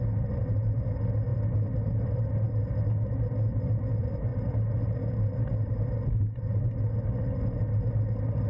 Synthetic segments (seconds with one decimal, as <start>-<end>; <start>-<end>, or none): none